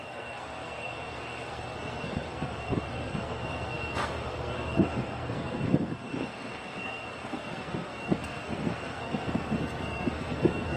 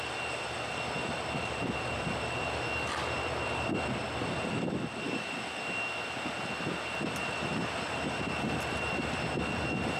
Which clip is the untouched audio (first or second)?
second